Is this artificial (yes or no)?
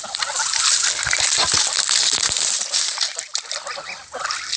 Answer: no